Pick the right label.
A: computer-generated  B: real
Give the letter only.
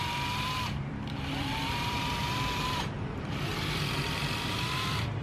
A